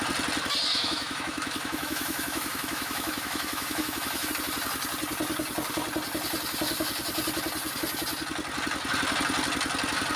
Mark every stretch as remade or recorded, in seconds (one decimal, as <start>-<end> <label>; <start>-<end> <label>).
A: 0.0-0.7 recorded; 0.7-4.3 remade; 4.3-10.2 recorded